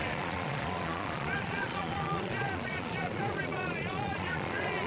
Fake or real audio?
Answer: fake